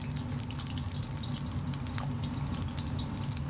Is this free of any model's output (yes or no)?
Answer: yes